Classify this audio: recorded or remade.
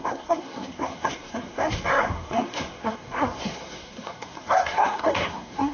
remade